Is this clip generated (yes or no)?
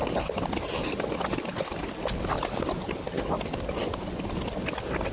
no